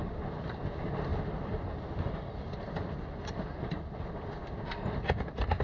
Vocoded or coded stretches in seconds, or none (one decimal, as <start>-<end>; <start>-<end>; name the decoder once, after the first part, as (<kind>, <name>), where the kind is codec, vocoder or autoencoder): 1.1-2.3 (vocoder, BigVGAN v2); 3.2-4.4